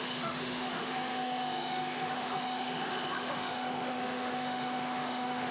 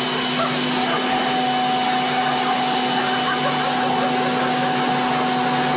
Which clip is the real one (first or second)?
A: second